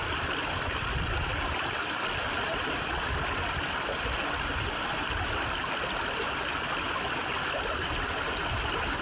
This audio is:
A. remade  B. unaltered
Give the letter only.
B